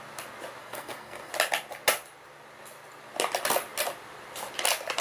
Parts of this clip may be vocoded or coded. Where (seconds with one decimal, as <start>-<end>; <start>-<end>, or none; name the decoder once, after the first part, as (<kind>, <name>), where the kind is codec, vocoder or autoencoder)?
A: 0.6-1.3 (codec, SNAC)